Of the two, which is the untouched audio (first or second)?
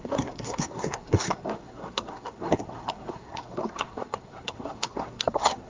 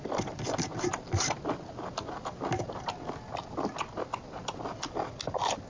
second